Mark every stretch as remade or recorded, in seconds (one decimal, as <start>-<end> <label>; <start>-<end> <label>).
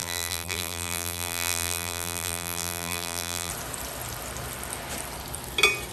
0.0-3.5 remade; 3.5-5.9 recorded